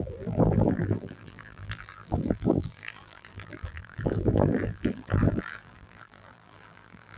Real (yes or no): no